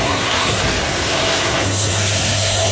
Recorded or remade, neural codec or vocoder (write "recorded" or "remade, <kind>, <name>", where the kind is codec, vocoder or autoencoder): remade, codec, SNAC